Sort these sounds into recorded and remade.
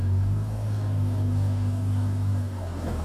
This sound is remade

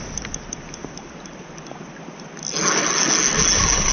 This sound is recorded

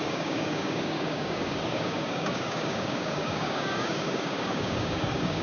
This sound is remade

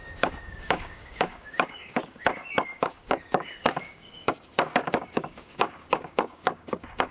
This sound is remade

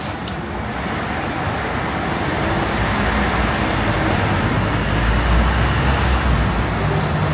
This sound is recorded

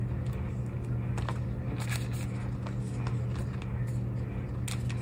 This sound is recorded